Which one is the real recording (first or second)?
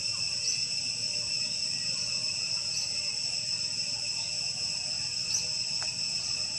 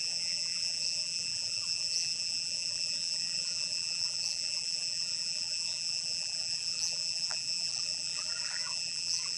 first